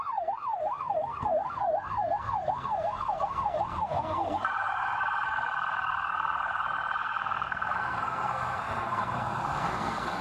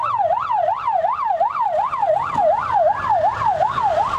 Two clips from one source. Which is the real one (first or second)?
second